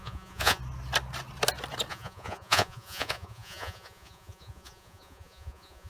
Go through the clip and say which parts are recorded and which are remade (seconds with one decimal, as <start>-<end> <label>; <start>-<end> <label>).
0.0-0.6 remade; 0.6-1.9 recorded; 1.9-5.9 remade